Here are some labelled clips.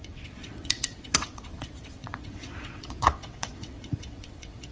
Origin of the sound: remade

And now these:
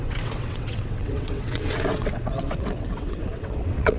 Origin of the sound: remade